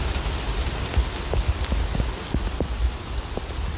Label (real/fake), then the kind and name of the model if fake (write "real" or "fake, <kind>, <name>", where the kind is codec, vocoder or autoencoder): real